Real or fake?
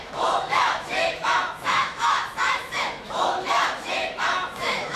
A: fake